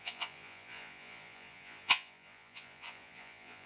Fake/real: fake